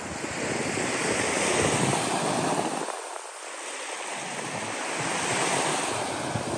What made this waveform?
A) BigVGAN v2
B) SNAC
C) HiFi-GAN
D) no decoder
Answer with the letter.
D